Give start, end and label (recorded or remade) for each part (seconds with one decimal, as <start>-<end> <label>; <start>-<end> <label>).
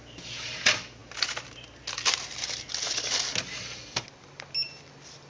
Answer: 0.0-5.3 recorded